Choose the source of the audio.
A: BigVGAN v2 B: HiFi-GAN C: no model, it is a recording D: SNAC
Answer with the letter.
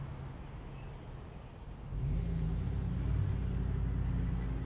C